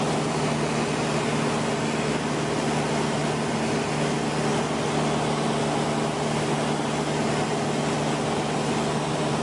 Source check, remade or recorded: recorded